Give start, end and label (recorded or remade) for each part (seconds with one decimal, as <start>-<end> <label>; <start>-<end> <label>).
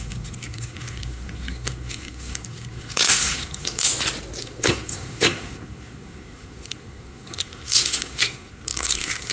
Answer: 0.0-3.9 remade; 3.9-4.4 recorded; 4.4-9.3 remade